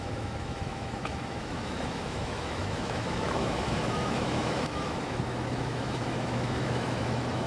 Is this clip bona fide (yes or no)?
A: no